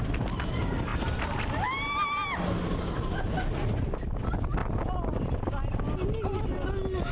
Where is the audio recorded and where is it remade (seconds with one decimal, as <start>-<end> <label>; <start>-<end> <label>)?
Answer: 0.0-7.1 recorded

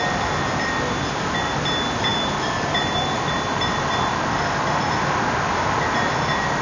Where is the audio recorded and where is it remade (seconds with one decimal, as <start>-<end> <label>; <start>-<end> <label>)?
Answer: 0.0-6.6 recorded

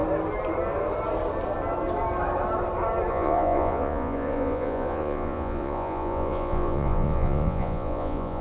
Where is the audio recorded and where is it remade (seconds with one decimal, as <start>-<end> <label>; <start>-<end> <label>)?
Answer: 0.0-3.1 recorded; 3.1-8.4 remade

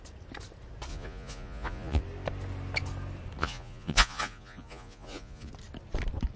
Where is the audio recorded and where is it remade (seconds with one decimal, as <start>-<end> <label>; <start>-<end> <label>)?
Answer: 0.0-0.9 recorded; 0.9-2.0 remade; 2.0-3.4 recorded; 3.4-5.5 remade; 5.5-6.4 recorded

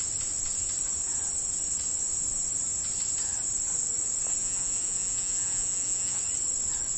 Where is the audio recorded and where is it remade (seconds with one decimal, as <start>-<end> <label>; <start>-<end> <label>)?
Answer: 0.0-4.4 recorded; 4.4-6.2 remade; 6.2-7.0 recorded